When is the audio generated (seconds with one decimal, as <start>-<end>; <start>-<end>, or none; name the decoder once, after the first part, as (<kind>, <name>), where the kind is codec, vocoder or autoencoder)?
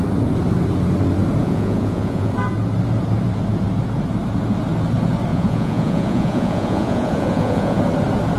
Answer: 1.4-2.3 (vocoder, Vocos); 5.3-7.8